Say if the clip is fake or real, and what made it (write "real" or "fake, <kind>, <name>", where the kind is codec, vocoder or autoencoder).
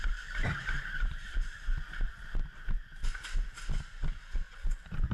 real